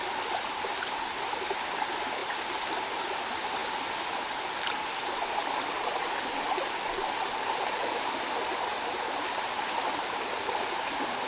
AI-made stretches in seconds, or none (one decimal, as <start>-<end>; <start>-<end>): none